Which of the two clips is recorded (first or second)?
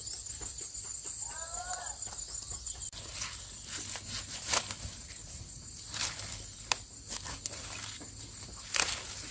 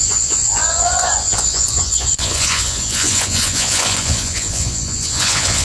first